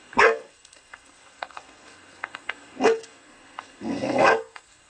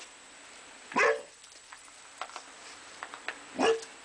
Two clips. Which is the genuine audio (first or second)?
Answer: second